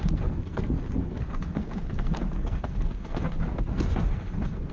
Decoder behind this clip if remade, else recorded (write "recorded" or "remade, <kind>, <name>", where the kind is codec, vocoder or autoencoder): remade, codec, SNAC